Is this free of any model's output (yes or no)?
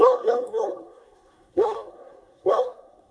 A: no